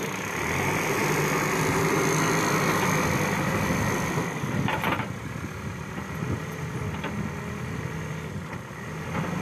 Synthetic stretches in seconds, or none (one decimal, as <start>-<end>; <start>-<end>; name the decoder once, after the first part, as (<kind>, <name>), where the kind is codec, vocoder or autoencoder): none